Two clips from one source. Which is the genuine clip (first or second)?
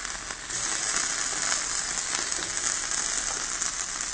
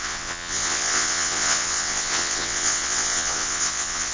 first